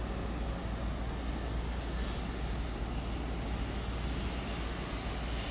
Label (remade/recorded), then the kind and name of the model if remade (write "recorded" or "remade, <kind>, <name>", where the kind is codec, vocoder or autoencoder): recorded